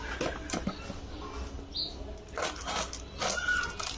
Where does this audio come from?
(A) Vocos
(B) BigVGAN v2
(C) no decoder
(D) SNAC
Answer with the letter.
C